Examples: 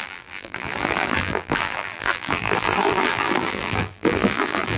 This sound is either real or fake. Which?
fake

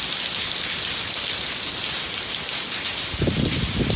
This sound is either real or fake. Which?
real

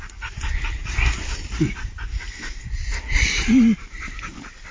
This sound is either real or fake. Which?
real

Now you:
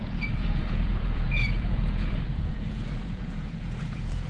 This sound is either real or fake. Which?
fake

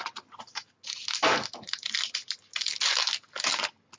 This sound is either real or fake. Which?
real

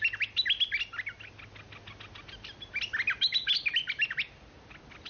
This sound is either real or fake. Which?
real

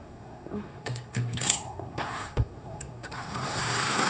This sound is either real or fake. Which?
fake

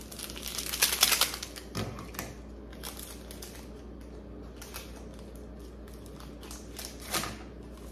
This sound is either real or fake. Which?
real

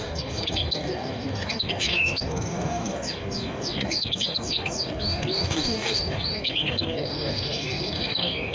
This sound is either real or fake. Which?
fake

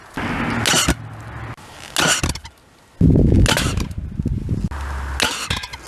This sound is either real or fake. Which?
real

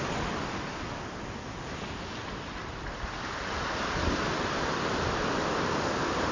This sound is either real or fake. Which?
real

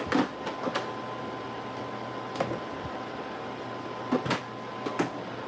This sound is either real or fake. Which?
real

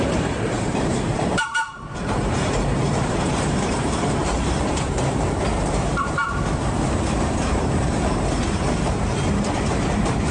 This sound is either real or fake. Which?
fake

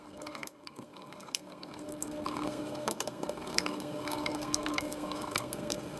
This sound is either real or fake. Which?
fake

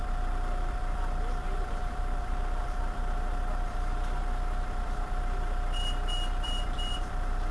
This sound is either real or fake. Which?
fake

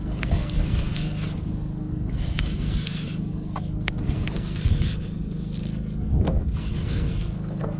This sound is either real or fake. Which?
fake